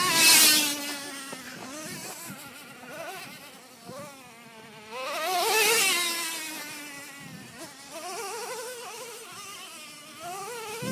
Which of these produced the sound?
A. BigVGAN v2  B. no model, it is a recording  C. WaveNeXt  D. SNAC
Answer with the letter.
B